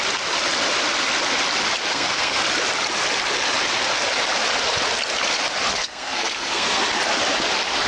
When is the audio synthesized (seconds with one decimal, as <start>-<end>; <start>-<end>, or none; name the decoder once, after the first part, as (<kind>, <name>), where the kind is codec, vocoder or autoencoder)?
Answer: 1.9-2.4 (codec, SNAC); 5.7-6.8